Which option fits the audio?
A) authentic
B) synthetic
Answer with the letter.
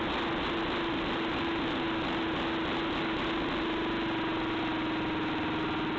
A